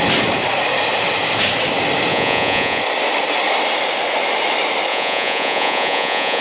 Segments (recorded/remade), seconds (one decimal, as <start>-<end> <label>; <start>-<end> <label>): 0.0-2.1 recorded; 2.1-2.8 remade; 2.8-4.9 recorded; 4.9-6.4 remade